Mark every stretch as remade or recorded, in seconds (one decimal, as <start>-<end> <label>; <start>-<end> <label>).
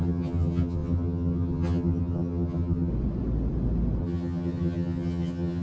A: 0.0-2.9 remade; 2.9-4.0 recorded; 4.0-5.6 remade